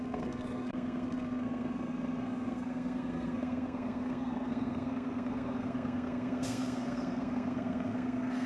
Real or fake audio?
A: fake